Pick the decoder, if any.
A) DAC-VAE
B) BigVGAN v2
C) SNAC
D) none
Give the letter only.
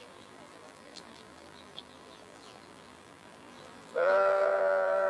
B